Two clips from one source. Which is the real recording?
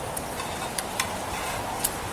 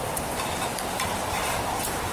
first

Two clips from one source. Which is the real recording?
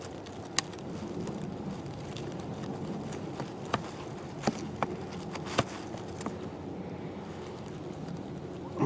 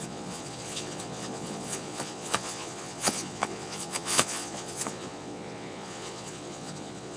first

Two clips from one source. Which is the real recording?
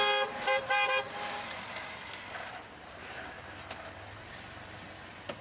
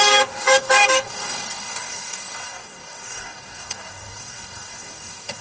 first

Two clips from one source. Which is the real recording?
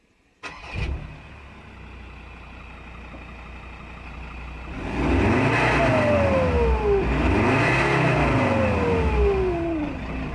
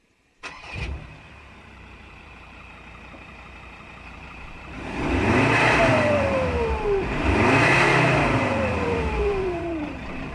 first